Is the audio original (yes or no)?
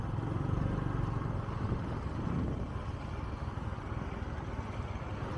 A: yes